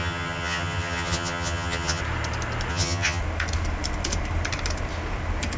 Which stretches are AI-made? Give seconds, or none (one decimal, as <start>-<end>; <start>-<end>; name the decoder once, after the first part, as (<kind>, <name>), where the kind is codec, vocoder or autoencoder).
0.0-2.0 (vocoder, HiFi-GAN); 2.7-3.2